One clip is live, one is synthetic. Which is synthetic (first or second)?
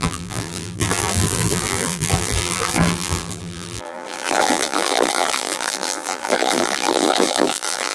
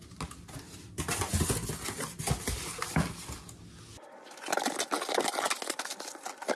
first